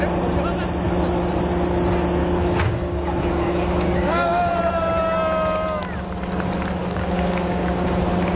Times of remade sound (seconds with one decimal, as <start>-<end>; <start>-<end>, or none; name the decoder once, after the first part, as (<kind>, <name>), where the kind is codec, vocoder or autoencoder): 2.2-4.5 (codec, DAC); 6.8-8.0